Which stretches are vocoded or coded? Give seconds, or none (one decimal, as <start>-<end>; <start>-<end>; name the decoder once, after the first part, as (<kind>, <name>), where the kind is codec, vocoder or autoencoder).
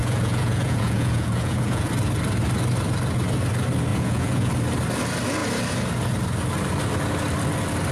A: 0.0-1.9 (vocoder, Vocos); 3.9-4.5